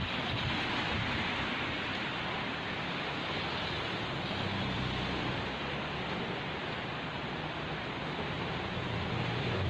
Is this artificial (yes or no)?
yes